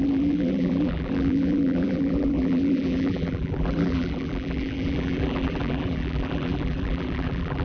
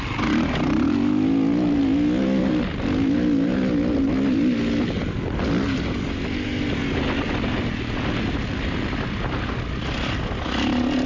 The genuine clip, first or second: second